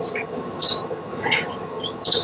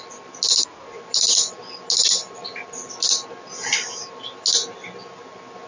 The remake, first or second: first